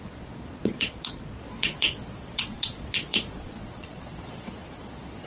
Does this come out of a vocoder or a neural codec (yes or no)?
yes